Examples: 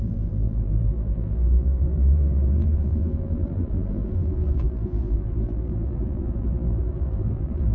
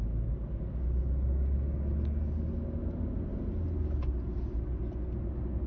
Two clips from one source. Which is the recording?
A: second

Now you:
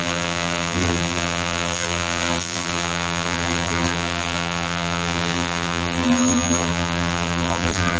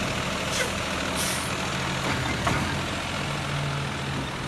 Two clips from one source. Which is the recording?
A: second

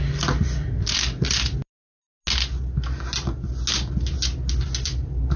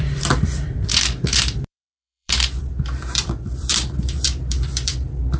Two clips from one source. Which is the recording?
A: first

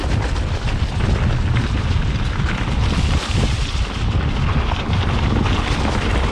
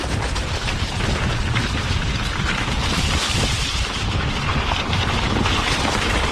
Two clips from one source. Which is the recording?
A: first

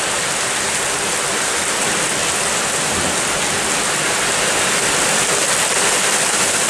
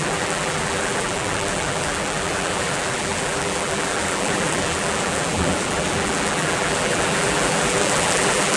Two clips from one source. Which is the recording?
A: first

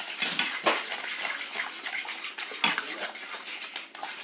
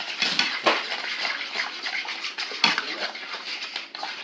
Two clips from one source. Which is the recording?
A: first